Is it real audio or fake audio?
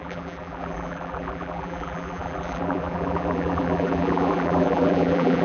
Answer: fake